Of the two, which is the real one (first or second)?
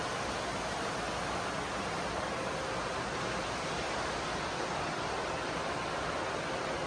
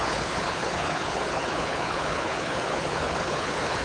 first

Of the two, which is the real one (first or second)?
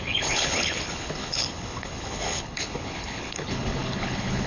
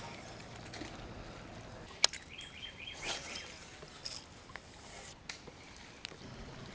second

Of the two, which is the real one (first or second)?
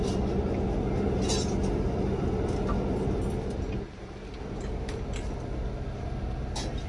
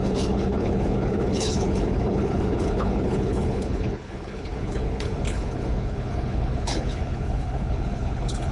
first